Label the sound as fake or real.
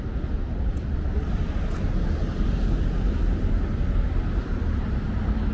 real